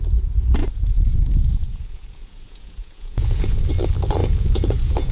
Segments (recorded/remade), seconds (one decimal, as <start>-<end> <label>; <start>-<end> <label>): 0.0-0.6 recorded; 0.6-3.7 remade; 3.7-4.2 recorded; 4.2-5.1 remade